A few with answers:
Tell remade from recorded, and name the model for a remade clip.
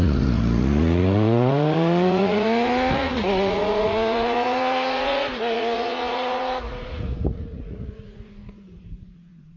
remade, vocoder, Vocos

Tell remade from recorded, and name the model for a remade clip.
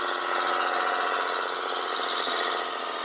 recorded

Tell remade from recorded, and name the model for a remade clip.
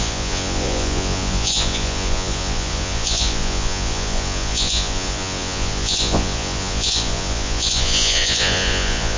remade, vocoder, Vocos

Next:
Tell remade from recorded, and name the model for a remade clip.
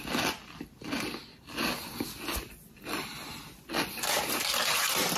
recorded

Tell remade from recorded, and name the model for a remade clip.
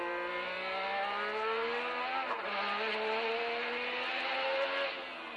recorded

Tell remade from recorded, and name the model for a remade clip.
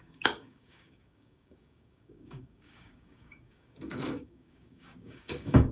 remade, codec, DAC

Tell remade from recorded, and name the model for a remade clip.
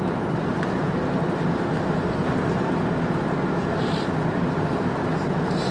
recorded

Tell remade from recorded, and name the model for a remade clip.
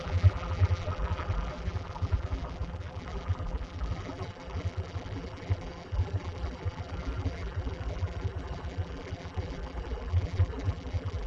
remade, vocoder, BigVGAN v2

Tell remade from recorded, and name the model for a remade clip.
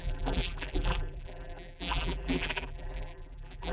remade, vocoder, BigVGAN v2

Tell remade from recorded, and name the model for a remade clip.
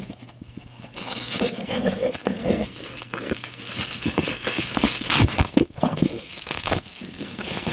remade, codec, SNAC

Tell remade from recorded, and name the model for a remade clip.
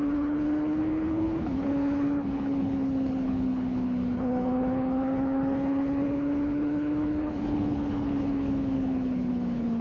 remade, codec, HILCodec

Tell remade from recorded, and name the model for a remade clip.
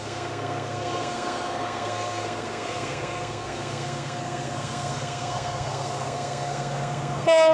remade, codec, SNAC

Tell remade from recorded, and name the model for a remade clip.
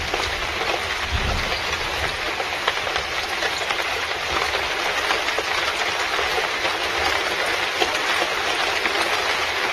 recorded